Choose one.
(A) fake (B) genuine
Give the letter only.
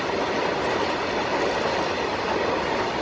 B